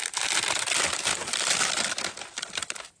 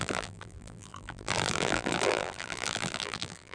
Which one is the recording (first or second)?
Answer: first